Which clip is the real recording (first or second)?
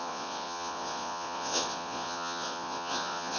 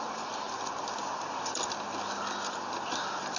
second